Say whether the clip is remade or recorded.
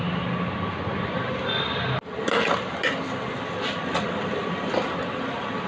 recorded